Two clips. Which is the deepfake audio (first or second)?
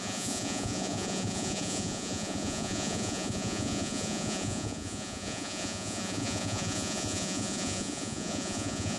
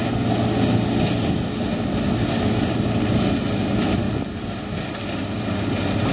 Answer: first